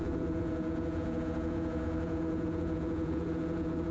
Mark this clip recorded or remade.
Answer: remade